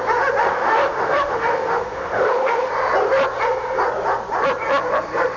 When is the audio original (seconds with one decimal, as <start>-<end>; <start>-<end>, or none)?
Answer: 0.0-0.4; 2.7-5.4